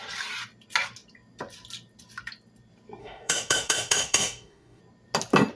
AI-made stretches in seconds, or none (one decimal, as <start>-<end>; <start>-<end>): 3.0-4.8